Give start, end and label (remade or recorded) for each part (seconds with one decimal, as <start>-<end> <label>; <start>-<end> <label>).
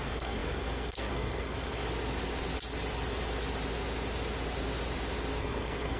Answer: 0.0-1.8 remade; 1.8-5.4 recorded; 5.4-6.0 remade